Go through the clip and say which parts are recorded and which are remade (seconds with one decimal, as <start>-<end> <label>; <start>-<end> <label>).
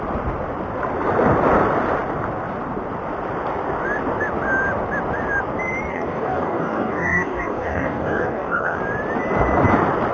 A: 0.0-5.9 recorded; 5.9-8.8 remade; 8.8-10.1 recorded